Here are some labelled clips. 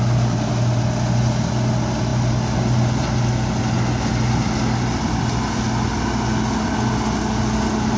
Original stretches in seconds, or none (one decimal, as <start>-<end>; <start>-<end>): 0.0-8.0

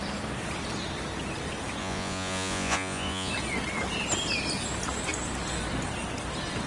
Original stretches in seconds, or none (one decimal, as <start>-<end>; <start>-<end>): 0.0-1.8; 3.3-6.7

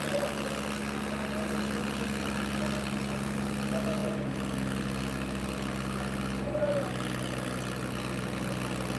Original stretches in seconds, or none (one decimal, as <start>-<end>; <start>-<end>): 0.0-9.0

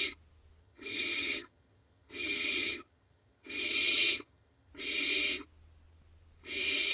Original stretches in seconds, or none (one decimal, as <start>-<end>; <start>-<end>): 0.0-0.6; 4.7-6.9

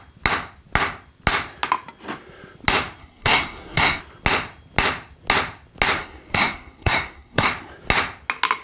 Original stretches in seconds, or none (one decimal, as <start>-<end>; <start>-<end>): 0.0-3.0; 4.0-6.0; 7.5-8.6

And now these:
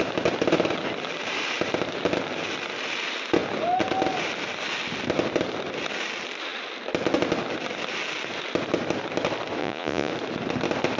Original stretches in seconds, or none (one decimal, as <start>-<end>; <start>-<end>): 0.0-9.6; 10.1-11.0

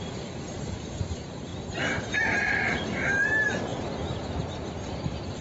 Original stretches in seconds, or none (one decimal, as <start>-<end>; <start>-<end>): 1.5-2.4